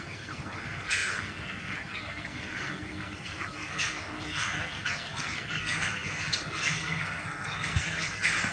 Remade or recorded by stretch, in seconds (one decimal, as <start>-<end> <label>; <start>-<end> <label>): 0.0-8.5 remade